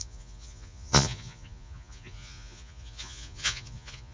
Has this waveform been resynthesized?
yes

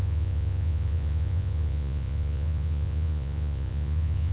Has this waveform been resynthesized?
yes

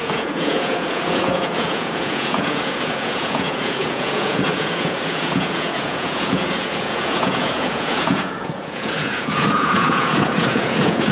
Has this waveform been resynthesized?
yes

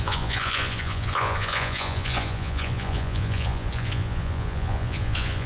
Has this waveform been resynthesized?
yes